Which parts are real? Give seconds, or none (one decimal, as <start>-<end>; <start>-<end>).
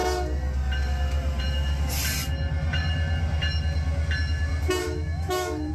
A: 0.0-4.8